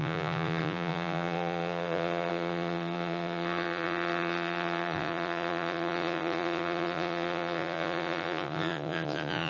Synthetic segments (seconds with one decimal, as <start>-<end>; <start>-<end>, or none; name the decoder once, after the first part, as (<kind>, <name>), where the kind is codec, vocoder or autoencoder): 0.0-9.5 (vocoder, Vocos)